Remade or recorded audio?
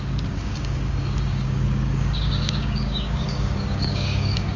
remade